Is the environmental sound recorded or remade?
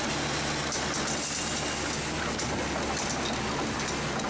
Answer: recorded